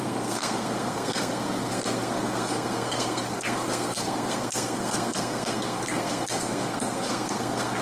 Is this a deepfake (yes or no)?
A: yes